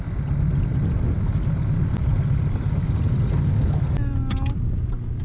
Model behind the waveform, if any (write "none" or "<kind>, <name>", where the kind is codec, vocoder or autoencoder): none